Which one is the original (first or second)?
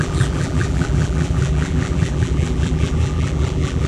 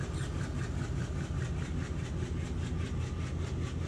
second